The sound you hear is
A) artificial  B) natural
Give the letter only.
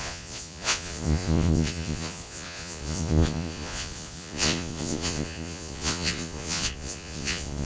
A